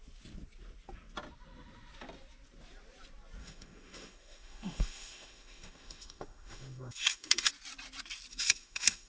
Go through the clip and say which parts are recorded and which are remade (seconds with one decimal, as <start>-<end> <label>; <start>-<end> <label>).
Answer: 0.0-3.4 recorded; 3.4-7.5 remade; 7.5-8.3 recorded; 8.3-9.1 remade